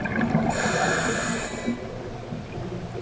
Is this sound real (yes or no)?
yes